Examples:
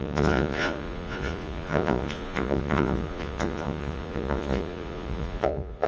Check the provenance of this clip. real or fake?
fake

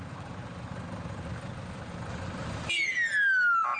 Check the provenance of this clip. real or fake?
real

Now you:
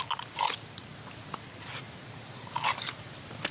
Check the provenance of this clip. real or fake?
real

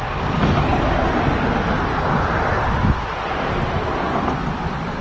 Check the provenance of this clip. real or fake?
real